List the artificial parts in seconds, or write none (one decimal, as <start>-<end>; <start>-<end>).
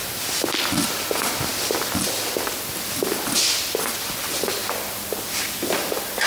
none